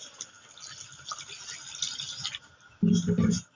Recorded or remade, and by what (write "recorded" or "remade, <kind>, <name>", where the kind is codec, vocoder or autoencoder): recorded